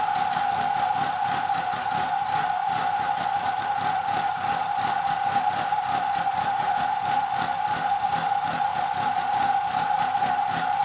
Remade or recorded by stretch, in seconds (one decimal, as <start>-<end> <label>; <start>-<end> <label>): 0.0-10.8 recorded